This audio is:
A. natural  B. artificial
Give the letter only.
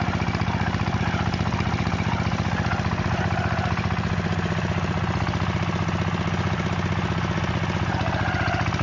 A